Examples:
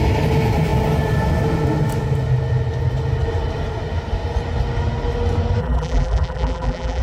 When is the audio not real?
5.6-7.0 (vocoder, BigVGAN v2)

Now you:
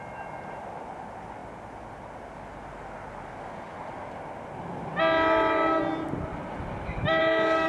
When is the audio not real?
none

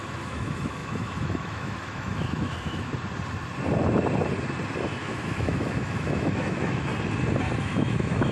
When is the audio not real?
0.0-2.9 (autoencoder, DAC-VAE); 5.0-6.9; 7.6-8.3